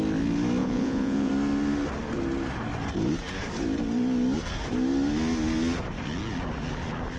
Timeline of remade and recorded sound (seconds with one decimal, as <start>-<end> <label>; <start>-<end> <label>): 0.0-0.6 recorded; 0.6-1.3 remade; 1.3-7.2 recorded